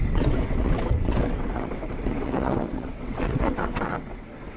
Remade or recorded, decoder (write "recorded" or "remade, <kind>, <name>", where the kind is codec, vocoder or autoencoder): remade, vocoder, WaveNeXt